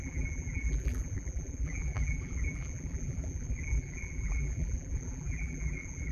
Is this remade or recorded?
remade